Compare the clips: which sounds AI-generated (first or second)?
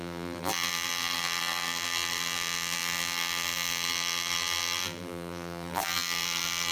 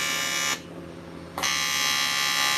first